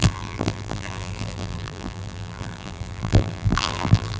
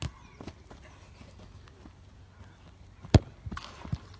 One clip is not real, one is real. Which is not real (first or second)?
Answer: first